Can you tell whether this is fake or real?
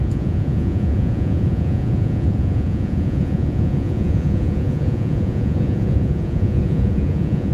fake